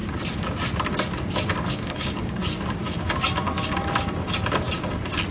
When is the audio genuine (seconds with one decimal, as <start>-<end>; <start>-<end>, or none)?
0.0-1.7; 2.4-5.3

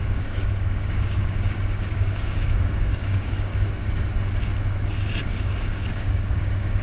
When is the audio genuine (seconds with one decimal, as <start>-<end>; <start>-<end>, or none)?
3.5-5.3

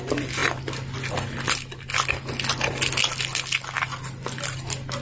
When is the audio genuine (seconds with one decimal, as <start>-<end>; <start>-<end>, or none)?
0.0-5.0

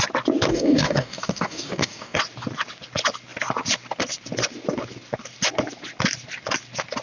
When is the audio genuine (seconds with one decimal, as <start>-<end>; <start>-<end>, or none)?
0.0-0.5; 2.2-7.0

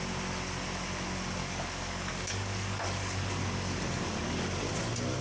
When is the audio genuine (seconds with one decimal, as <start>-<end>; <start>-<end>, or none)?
0.0-1.4; 4.5-5.2